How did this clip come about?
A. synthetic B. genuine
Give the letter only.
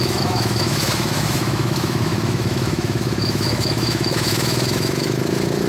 A